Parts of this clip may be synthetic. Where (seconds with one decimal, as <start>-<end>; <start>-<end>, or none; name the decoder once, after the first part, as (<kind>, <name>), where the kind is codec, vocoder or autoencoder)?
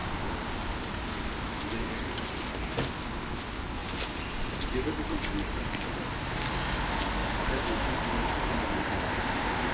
0.0-0.8 (vocoder, BigVGAN v2); 3.8-6.4; 7.2-9.0